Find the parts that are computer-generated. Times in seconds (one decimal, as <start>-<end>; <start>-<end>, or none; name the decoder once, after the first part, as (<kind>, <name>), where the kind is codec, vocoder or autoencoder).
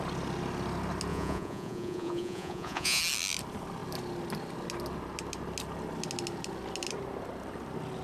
1.1-3.0 (vocoder, Vocos)